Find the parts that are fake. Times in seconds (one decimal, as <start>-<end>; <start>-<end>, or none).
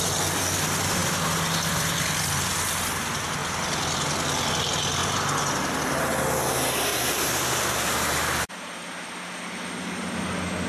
6.9-8.7